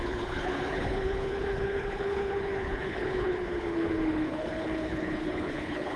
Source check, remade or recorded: remade